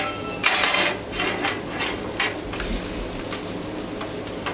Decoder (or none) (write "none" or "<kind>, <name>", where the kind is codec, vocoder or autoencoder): none